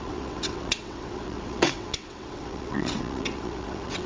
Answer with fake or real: fake